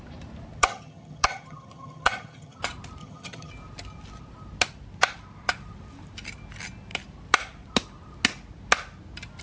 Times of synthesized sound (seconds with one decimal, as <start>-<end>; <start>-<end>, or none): 0.6-2.6; 3.0-3.5